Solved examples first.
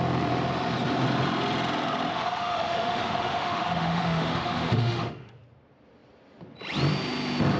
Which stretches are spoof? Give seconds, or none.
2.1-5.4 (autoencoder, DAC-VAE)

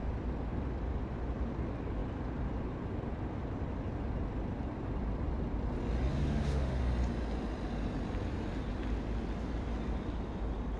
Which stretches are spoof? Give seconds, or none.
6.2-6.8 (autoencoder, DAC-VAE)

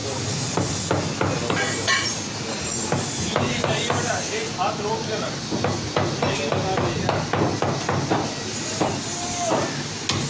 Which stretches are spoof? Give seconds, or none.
none

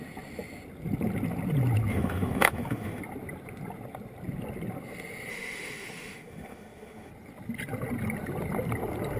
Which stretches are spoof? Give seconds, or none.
1.9-3.0 (autoencoder, DAC-VAE); 5.3-7.1

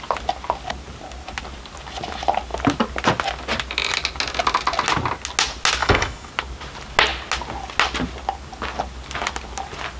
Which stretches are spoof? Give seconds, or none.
5.8-6.3 (autoencoder, DAC-VAE)

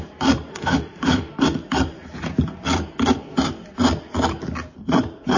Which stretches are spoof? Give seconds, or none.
0.5-1.3 (autoencoder, DAC-VAE)

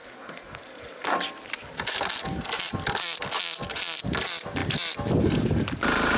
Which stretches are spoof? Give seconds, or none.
none